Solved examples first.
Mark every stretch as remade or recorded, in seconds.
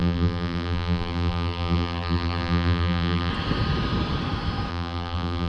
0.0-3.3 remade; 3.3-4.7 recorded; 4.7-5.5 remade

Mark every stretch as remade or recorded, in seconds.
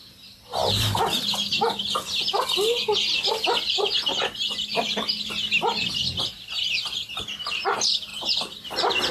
0.0-9.1 recorded